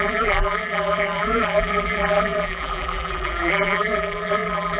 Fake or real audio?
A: fake